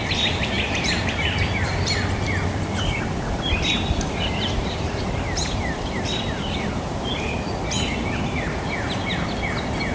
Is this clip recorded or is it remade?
remade